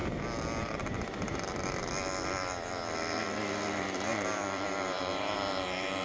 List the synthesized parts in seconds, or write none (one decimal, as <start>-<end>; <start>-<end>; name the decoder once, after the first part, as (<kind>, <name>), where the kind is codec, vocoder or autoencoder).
1.5-6.0 (vocoder, BigVGAN v2)